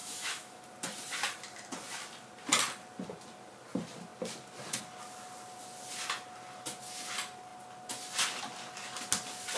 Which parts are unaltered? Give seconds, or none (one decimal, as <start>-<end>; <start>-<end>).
0.6-9.6